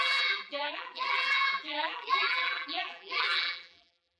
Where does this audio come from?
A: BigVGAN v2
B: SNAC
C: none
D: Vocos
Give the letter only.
A